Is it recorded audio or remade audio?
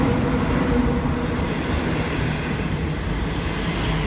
recorded